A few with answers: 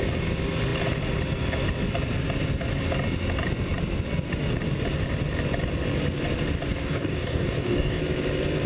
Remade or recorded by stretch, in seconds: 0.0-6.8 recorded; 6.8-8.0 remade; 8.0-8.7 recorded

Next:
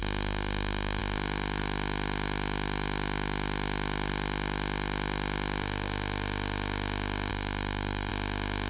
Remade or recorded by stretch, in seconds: 0.0-1.0 remade; 1.0-7.3 recorded; 7.3-8.1 remade; 8.1-8.7 recorded

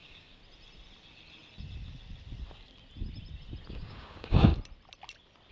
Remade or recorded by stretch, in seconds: 0.0-0.4 remade; 0.4-3.7 recorded; 3.7-4.5 remade; 4.5-5.5 recorded

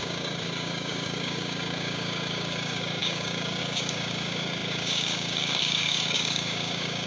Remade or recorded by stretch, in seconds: 0.0-7.1 remade

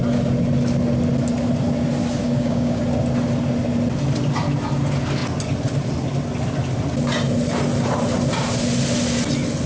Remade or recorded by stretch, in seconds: 0.0-2.2 recorded; 2.2-2.8 remade; 2.8-9.7 recorded

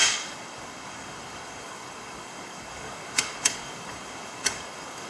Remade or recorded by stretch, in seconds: 0.0-5.1 remade